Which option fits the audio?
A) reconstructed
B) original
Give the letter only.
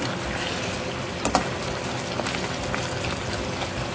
B